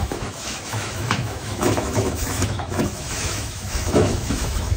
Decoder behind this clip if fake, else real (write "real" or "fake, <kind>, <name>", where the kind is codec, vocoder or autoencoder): fake, autoencoder, DAC-VAE